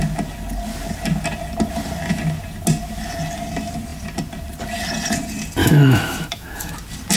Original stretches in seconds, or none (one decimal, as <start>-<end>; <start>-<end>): 0.0-5.6; 6.7-7.2